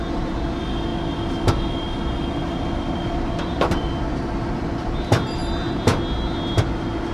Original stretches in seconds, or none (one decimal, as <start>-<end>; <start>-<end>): 0.9-3.5; 5.4-6.5